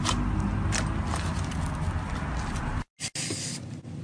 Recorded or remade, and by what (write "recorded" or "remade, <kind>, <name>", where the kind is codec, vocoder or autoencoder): recorded